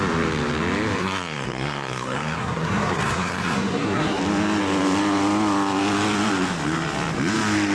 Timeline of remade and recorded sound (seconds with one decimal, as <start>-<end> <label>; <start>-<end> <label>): 0.0-1.0 recorded; 1.0-4.2 remade; 4.2-7.7 recorded